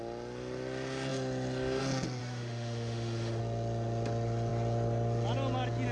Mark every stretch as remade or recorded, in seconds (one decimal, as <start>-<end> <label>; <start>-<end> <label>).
0.0-2.2 recorded; 2.2-3.4 remade; 3.4-5.9 recorded